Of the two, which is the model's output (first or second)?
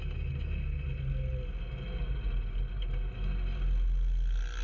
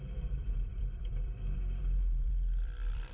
second